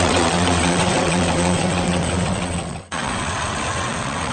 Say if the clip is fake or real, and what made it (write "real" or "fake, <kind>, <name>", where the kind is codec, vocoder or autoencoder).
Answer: fake, vocoder, WaveNeXt